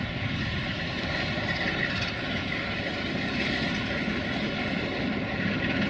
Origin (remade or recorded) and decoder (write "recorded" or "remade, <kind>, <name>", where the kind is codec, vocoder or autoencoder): recorded